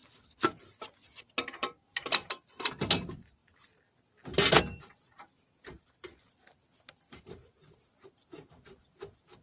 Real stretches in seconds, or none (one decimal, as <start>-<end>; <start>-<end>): 0.0-1.4; 3.4-4.6